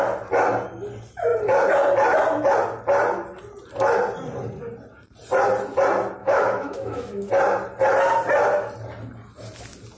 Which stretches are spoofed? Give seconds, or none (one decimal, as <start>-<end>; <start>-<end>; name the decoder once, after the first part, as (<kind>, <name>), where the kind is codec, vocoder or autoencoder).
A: 6.2-7.3 (autoencoder, DAC-VAE)